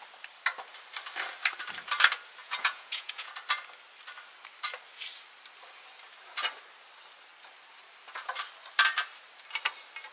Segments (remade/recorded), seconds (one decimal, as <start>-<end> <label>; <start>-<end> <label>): 0.0-2.4 recorded; 2.4-3.3 remade; 3.3-10.1 recorded